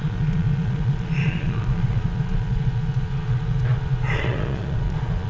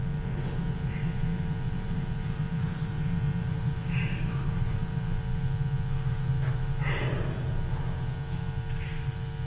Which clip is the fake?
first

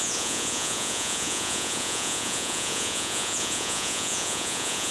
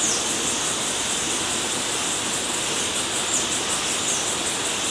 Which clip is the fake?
first